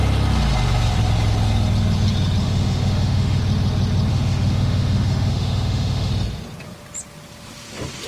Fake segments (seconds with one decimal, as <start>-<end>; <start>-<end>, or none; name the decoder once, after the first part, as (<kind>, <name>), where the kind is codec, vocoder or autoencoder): 2.4-3.4 (autoencoder, DAC-VAE); 4.1-6.1